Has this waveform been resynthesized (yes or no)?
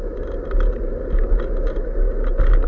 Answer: no